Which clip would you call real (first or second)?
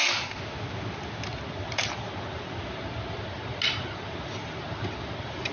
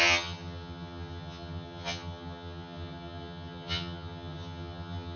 first